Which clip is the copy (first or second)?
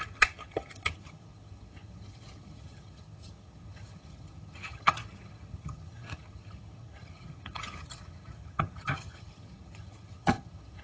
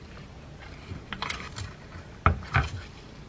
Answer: first